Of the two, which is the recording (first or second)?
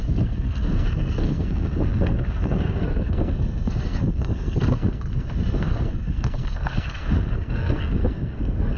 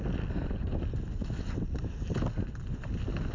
second